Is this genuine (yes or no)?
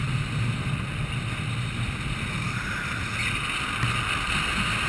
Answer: yes